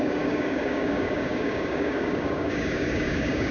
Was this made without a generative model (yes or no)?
no